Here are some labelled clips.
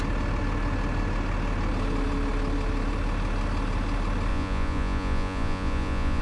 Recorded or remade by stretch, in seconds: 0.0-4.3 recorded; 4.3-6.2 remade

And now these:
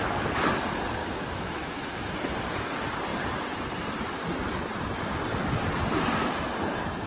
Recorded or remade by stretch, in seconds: 0.0-1.0 recorded; 1.0-2.1 remade; 2.1-7.1 recorded

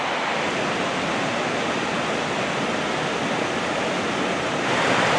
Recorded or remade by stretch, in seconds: 0.0-5.2 recorded

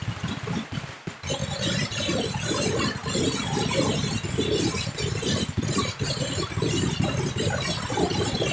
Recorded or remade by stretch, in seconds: 0.0-8.5 recorded